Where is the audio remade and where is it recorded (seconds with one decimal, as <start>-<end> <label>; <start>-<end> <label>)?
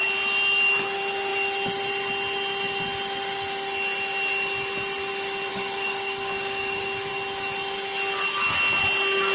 0.0-5.5 recorded; 5.5-7.1 remade; 7.1-9.3 recorded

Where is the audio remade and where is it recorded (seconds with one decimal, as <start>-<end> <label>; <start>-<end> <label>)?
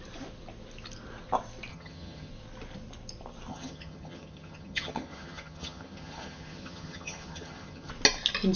0.0-1.7 recorded; 1.7-2.3 remade; 2.3-3.5 recorded; 3.5-7.9 remade; 7.9-8.6 recorded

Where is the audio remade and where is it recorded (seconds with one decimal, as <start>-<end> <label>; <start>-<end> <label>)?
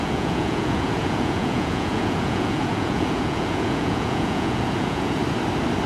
0.0-5.2 remade; 5.2-5.9 recorded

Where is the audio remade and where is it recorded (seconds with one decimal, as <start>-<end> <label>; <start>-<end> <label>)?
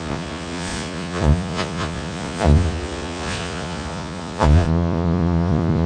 0.0-5.9 remade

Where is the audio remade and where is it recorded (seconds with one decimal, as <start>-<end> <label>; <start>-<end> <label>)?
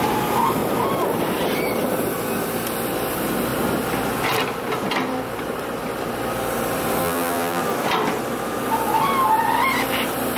0.0-7.0 recorded; 7.0-7.6 remade; 7.6-10.4 recorded